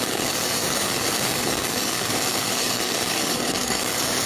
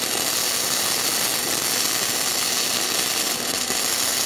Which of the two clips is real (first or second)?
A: second